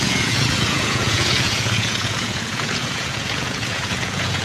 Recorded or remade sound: remade